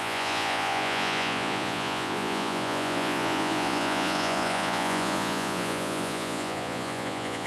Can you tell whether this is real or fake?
fake